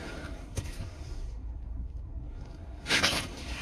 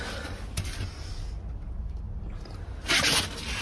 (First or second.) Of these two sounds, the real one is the second